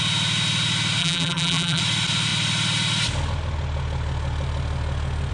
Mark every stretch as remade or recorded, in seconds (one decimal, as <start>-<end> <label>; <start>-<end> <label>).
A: 0.0-1.0 recorded; 1.0-1.8 remade; 1.8-5.3 recorded